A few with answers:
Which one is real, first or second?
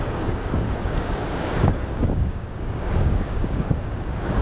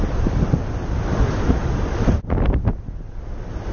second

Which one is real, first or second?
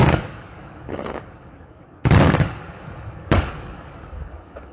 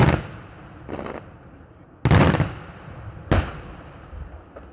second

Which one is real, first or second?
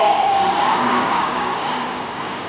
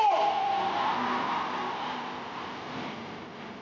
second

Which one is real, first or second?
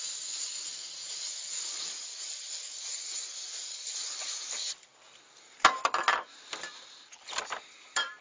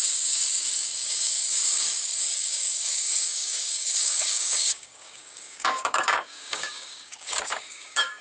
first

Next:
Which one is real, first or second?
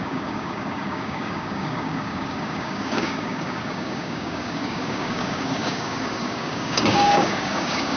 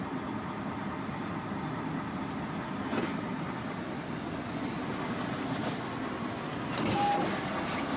second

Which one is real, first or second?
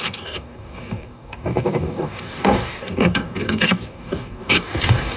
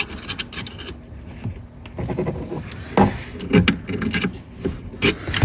second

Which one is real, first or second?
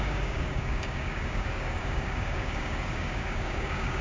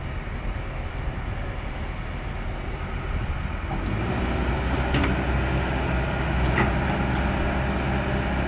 second